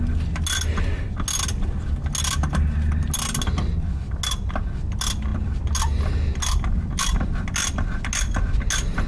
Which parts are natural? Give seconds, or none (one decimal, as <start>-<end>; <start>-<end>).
0.0-9.1